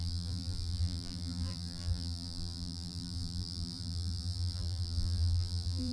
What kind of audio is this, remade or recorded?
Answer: remade